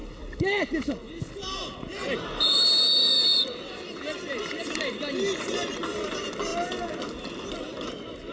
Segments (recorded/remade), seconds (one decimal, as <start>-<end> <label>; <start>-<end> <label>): 0.0-8.3 recorded